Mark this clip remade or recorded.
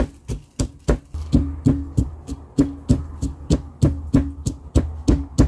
recorded